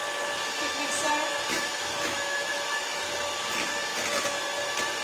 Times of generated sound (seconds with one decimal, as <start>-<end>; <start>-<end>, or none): 1.5-3.4